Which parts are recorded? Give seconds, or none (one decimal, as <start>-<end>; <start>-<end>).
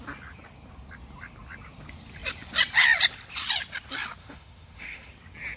0.0-4.2; 5.1-5.6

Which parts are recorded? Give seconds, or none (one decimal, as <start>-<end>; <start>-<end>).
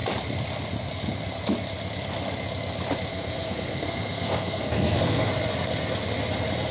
0.0-3.1; 5.3-6.7